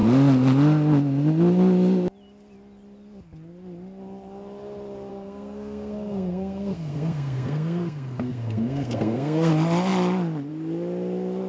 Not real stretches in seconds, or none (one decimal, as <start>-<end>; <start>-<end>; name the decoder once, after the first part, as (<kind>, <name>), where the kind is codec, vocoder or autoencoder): 5.1-9.5 (codec, SNAC)